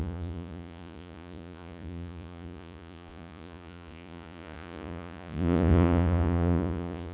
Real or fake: fake